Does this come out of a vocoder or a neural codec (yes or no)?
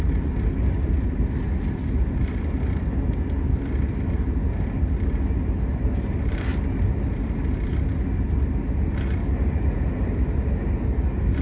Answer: no